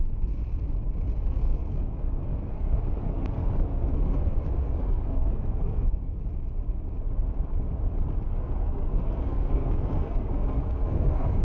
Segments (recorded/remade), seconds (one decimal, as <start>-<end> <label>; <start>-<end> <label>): 0.0-0.4 remade; 0.4-1.2 recorded; 1.2-6.2 remade; 6.2-8.3 recorded; 8.3-11.4 remade